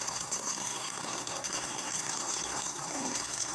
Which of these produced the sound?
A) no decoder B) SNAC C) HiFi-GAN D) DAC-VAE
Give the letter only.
B